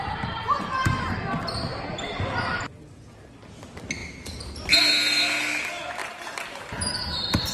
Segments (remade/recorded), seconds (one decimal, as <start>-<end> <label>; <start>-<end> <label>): 0.0-1.7 recorded; 1.7-2.3 remade; 2.3-6.0 recorded; 6.0-7.5 remade